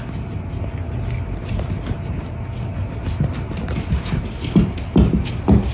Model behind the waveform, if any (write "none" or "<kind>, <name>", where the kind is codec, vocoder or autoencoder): none